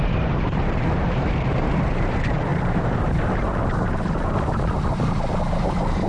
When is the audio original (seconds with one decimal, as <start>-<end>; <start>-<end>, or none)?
none